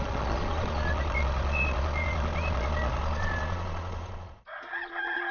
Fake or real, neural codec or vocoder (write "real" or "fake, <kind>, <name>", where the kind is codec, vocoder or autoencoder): fake, vocoder, Vocos